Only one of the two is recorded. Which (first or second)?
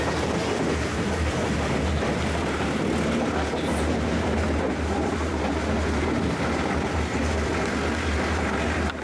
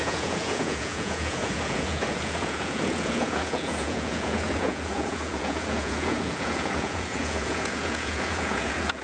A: first